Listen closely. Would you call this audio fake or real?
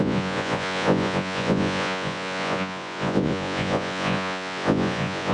fake